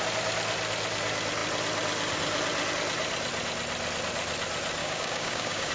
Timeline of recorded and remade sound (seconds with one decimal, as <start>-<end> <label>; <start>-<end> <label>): 0.0-4.8 recorded; 4.8-5.7 remade